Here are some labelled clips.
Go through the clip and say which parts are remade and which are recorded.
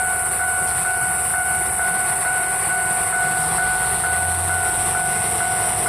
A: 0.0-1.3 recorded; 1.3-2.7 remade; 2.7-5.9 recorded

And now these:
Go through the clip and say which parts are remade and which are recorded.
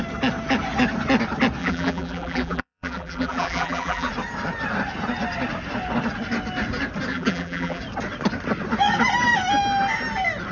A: 0.0-1.6 recorded; 1.6-4.1 remade; 4.1-7.1 recorded; 7.1-7.8 remade; 7.8-10.5 recorded